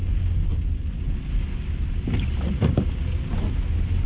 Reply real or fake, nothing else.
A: real